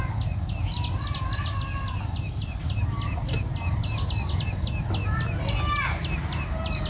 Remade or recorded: recorded